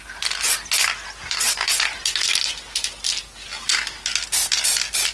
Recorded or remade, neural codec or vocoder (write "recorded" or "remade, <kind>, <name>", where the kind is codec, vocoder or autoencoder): recorded